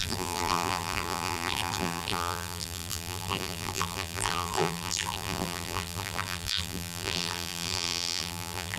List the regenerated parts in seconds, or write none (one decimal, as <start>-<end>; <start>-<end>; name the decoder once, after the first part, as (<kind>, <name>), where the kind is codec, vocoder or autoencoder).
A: 0.0-8.8 (vocoder, BigVGAN v2)